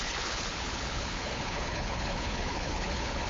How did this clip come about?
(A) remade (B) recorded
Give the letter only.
A